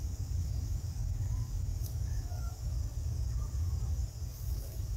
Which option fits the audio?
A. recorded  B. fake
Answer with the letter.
B